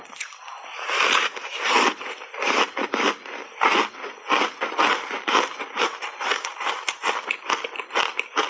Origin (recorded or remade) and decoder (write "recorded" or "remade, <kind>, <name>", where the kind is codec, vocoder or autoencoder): recorded